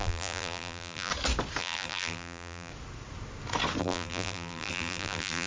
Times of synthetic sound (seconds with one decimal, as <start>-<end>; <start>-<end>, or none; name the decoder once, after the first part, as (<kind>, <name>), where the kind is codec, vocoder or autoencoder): 0.0-1.1 (vocoder, BigVGAN v2); 1.6-2.7; 3.8-5.5